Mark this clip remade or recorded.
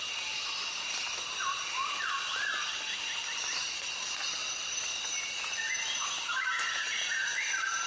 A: recorded